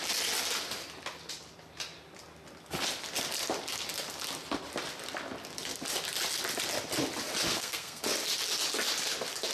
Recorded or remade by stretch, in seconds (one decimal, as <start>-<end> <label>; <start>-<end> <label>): 0.0-7.5 recorded; 7.5-8.0 remade; 8.0-9.5 recorded

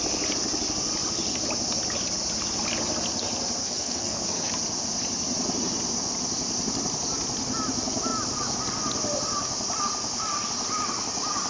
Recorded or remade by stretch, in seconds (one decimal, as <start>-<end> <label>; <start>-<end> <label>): 0.0-3.6 recorded; 3.6-4.5 remade; 4.5-11.5 recorded